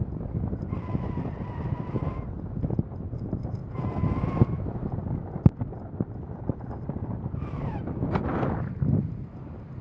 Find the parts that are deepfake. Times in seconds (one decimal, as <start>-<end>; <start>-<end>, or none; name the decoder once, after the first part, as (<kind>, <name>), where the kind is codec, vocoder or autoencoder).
none